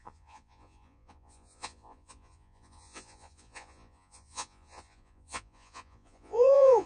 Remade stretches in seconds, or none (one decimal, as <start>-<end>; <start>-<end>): 0.0-6.9